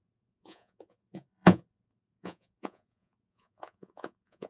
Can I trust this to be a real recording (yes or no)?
no